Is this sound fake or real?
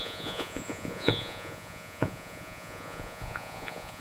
fake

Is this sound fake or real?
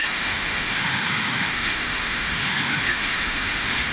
fake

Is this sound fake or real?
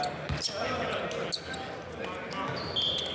real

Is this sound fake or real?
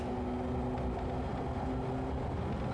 real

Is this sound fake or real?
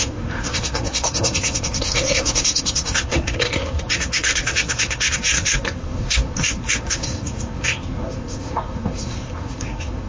fake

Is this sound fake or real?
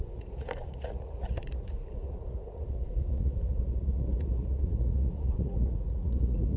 fake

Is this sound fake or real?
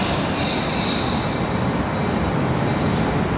real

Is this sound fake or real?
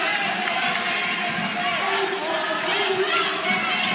real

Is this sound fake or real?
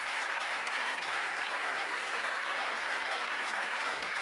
fake